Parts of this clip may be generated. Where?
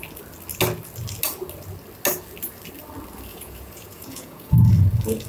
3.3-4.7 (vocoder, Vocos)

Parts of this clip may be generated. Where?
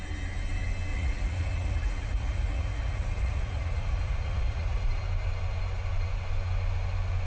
0.9-5.0 (vocoder, Vocos)